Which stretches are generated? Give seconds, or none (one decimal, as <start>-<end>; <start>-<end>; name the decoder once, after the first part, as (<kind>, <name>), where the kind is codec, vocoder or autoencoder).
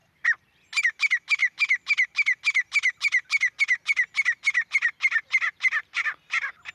none